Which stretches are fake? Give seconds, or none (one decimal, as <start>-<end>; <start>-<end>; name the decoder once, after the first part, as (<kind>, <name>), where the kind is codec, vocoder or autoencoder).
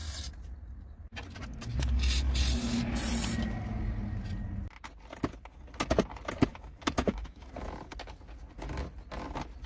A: 6.5-7.5 (autoencoder, DAC-VAE)